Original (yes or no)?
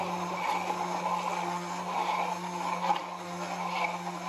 yes